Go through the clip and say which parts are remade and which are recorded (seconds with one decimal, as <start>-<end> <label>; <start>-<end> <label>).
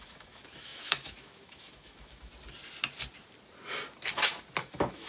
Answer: 0.0-2.3 remade; 2.3-4.6 recorded; 4.6-5.1 remade